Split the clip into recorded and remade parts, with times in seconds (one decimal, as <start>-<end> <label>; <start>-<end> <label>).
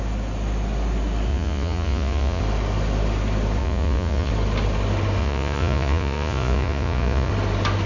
0.0-1.3 recorded; 1.3-2.4 remade; 2.4-3.6 recorded; 3.6-4.3 remade; 4.3-5.2 recorded; 5.2-7.3 remade; 7.3-7.9 recorded